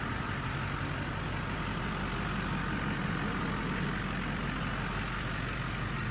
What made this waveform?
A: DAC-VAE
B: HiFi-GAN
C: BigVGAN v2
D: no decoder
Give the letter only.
D